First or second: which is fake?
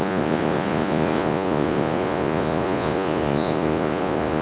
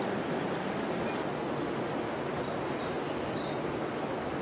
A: first